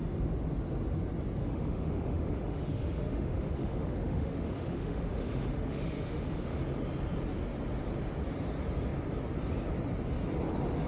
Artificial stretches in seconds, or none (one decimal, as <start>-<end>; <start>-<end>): 1.4-6.6